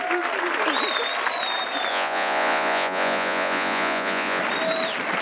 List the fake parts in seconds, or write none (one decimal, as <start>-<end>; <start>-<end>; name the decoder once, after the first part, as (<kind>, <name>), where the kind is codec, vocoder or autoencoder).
1.9-4.4 (vocoder, Vocos)